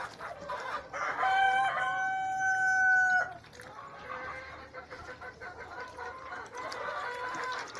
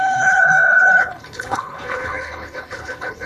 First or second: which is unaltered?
first